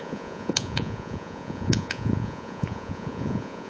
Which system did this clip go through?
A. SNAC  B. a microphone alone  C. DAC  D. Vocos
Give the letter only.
D